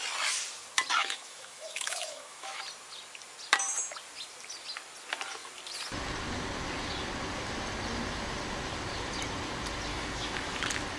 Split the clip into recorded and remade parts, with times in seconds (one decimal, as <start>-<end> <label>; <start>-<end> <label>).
0.0-1.0 recorded; 1.0-2.6 remade; 2.6-9.9 recorded; 9.9-10.6 remade; 10.6-11.0 recorded